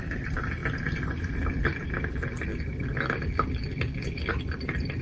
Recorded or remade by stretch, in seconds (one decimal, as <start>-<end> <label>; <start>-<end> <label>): 0.0-2.5 remade; 2.5-4.3 recorded; 4.3-5.0 remade